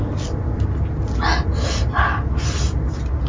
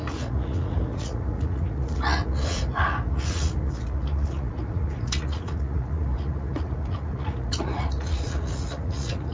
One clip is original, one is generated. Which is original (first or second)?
first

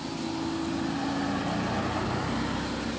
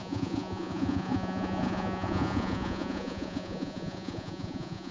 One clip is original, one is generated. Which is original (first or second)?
first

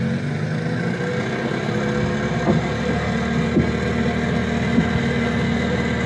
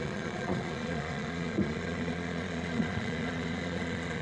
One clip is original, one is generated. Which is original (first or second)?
first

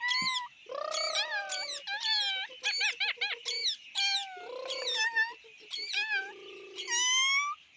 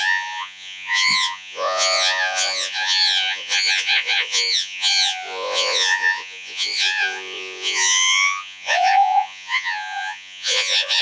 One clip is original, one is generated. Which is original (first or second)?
first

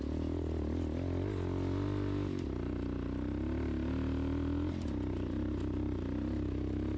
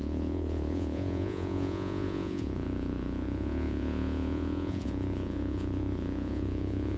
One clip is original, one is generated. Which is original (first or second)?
first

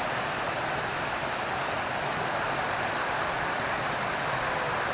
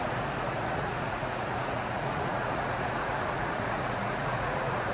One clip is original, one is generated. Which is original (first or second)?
first